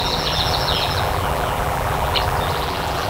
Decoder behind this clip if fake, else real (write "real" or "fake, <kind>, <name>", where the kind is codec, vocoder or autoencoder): fake, vocoder, BigVGAN v2